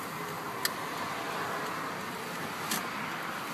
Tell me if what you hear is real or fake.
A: real